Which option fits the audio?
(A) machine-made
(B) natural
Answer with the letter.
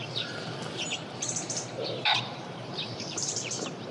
A